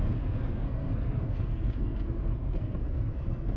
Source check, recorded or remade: remade